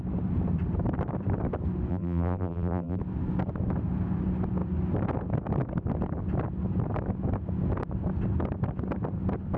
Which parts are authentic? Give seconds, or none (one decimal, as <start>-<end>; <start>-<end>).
0.0-1.9; 3.0-9.6